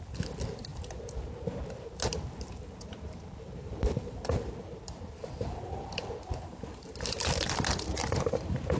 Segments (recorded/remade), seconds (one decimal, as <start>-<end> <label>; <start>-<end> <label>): 0.0-2.1 recorded; 2.1-4.7 remade; 4.7-8.8 recorded